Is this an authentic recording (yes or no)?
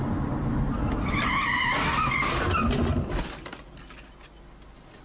yes